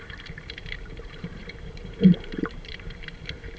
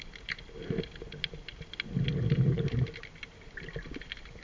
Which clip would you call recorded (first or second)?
second